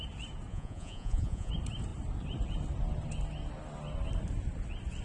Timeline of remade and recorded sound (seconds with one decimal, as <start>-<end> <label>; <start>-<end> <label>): 0.0-0.5 recorded; 0.5-1.5 remade; 1.5-5.0 recorded

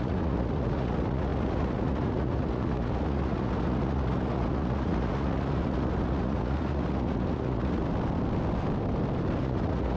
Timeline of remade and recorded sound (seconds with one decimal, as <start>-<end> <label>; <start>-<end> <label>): 0.0-7.8 remade; 7.8-9.4 recorded; 9.4-10.0 remade

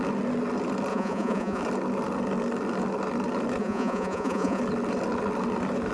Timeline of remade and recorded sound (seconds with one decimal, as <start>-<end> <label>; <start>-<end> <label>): 0.0-0.9 recorded; 0.9-1.6 remade; 1.6-3.6 recorded; 3.6-4.6 remade; 4.6-5.9 recorded

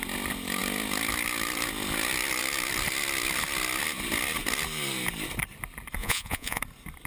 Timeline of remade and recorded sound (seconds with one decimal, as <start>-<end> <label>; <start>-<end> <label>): 0.0-6.0 recorded; 6.0-6.6 remade; 6.6-7.1 recorded

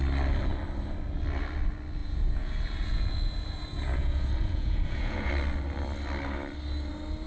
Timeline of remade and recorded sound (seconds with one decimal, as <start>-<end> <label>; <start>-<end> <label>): 0.0-2.0 recorded; 2.0-5.3 remade; 5.3-7.3 recorded